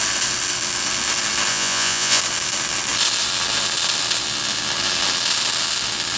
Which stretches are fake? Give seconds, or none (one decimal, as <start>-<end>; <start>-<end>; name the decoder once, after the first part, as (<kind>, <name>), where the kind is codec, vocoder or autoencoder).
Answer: 1.5-2.2 (vocoder, Vocos)